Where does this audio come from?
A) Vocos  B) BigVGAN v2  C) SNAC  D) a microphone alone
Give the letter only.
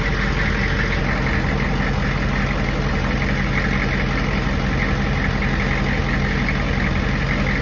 D